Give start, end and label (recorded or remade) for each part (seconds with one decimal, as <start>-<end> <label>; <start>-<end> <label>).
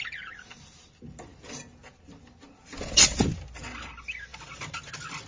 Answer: 0.0-5.3 recorded